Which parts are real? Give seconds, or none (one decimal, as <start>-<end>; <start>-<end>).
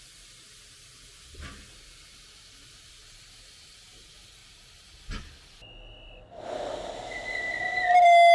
0.0-4.4; 5.2-8.3